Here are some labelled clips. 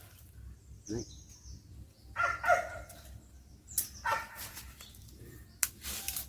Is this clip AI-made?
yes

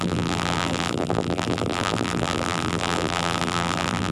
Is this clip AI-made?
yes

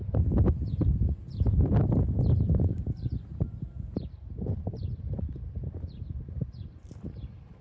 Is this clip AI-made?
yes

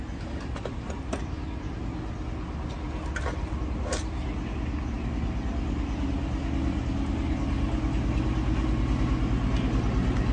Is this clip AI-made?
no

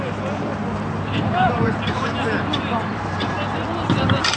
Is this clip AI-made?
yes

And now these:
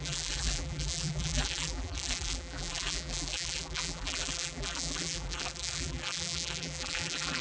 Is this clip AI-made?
yes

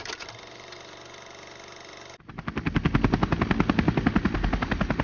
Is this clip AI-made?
no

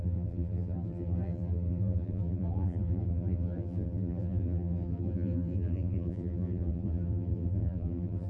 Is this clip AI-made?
yes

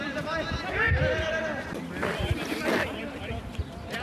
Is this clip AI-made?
yes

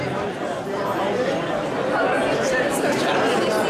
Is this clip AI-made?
no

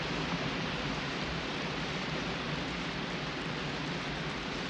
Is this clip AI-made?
no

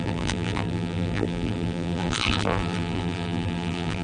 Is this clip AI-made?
yes